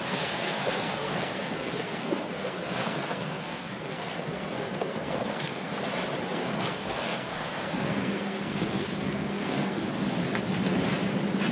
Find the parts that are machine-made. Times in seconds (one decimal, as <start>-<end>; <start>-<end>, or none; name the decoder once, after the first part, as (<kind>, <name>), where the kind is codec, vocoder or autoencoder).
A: 0.0-5.7 (codec, SNAC); 6.3-9.9